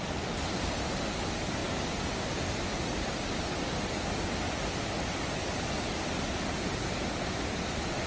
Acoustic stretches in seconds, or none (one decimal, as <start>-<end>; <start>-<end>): 0.0-8.1